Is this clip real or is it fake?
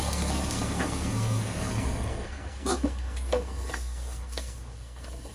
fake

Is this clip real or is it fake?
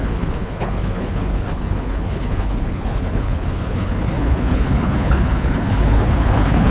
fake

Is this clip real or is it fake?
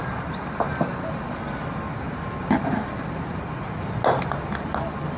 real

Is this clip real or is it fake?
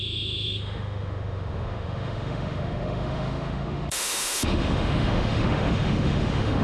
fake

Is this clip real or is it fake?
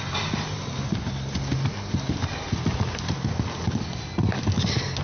real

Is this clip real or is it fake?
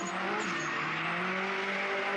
real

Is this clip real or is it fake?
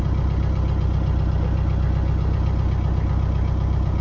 real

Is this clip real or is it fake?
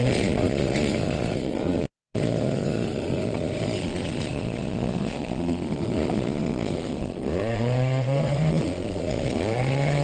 fake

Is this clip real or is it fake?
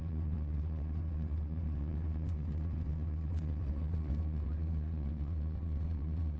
fake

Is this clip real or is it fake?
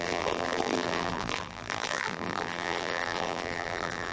fake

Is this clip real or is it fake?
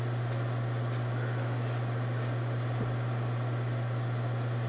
real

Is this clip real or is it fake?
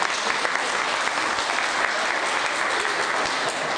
real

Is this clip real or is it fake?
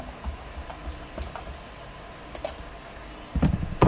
real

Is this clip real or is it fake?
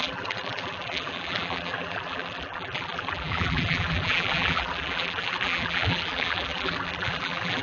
fake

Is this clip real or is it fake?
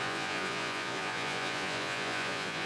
fake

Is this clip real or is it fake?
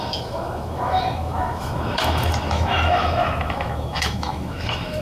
fake